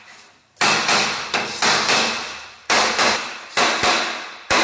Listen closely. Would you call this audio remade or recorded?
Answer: recorded